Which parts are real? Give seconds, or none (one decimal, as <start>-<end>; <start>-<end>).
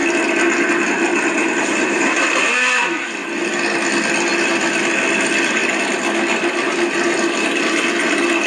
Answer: 0.0-1.1; 2.3-8.5